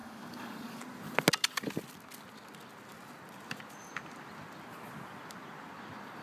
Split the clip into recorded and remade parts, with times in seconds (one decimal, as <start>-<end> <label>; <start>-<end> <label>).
0.0-0.8 remade; 0.8-6.2 recorded